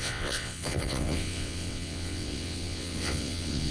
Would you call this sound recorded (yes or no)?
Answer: no